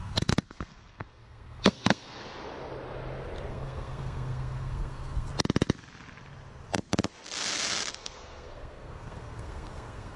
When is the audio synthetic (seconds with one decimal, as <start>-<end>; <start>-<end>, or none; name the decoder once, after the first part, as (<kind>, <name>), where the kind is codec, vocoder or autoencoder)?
0.0-2.2 (codec, SNAC); 3.5-5.3; 7.9-10.2